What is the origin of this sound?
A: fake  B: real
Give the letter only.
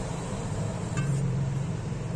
A